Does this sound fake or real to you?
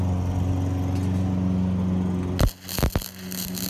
real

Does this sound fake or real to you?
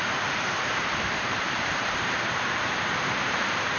fake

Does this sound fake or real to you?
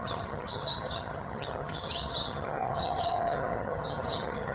fake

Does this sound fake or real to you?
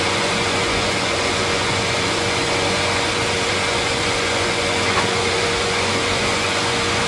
fake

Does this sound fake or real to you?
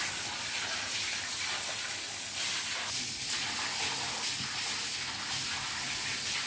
real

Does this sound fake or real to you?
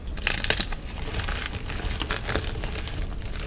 real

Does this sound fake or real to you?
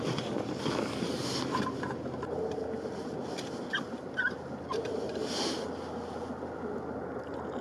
real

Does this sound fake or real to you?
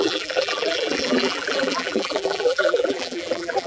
fake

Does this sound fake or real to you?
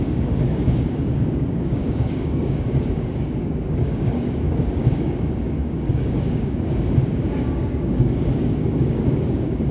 fake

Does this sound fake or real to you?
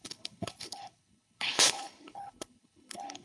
fake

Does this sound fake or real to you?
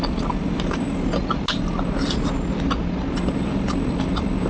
real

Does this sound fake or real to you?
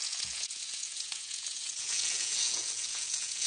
fake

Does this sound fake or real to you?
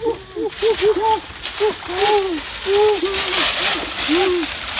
real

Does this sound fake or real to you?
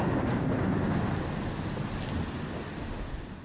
real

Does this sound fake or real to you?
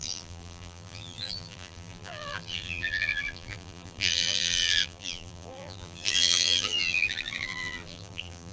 fake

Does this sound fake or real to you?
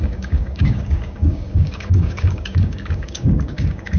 fake